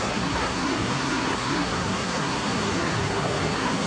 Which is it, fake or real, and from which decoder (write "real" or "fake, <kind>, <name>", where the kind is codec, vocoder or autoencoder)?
fake, codec, SNAC